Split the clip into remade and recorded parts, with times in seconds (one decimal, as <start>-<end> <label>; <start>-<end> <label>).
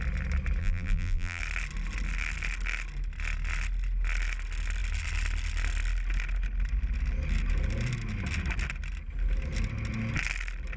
0.0-0.6 recorded; 0.6-1.4 remade; 1.4-10.8 recorded